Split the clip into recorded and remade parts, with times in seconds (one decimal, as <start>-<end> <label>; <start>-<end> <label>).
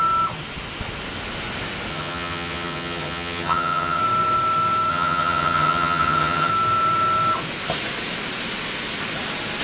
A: 0.0-1.9 recorded; 1.9-4.0 remade; 4.0-4.9 recorded; 4.9-6.5 remade; 6.5-9.6 recorded